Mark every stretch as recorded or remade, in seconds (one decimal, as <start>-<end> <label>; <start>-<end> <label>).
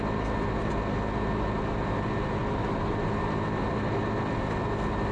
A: 0.0-5.1 recorded